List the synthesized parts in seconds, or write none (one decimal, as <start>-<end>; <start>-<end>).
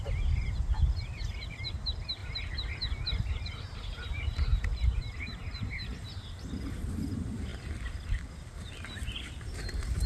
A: 0.0-2.2; 3.3-7.5; 9.3-10.1